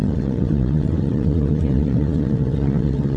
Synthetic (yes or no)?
yes